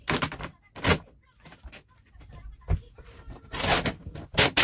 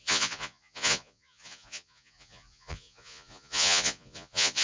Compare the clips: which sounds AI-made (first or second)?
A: second